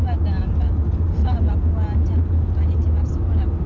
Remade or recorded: recorded